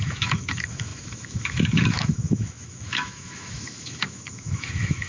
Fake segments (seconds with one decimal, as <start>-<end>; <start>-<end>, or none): 0.0-5.1